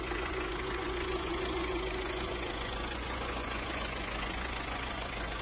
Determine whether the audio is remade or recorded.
remade